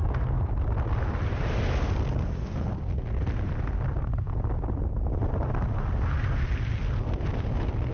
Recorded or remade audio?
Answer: recorded